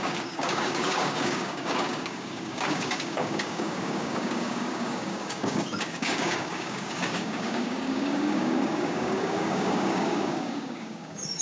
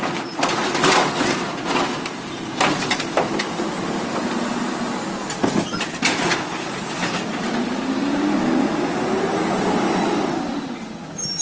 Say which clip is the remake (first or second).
first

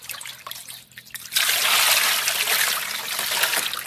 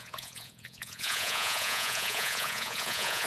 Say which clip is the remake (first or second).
second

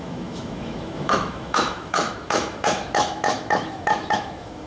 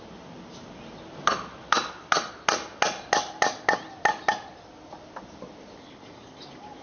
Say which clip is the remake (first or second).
first